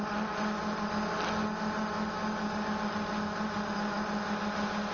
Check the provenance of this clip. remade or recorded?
recorded